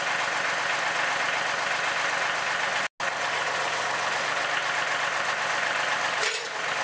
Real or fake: real